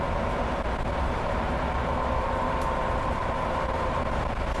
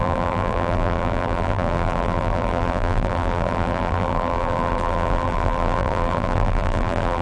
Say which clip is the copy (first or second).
second